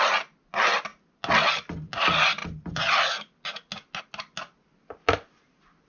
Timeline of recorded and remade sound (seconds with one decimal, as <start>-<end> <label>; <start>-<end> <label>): 0.0-5.9 recorded